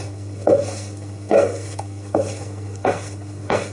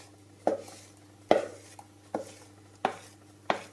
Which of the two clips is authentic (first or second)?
second